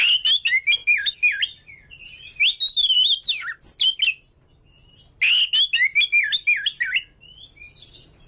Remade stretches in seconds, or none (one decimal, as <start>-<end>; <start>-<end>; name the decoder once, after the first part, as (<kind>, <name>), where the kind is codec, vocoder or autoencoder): none